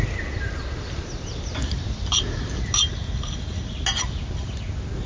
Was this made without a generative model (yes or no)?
yes